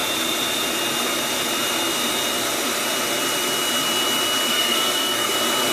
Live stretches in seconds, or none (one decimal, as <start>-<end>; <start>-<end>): 0.0-4.5; 5.3-5.7